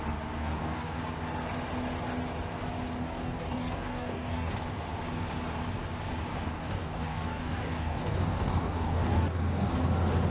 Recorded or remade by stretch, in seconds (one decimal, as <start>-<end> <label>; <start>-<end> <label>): 0.0-0.4 recorded; 0.4-1.0 remade; 1.0-3.0 recorded; 3.0-4.5 remade; 4.5-6.3 recorded; 6.3-9.7 remade; 9.7-10.3 recorded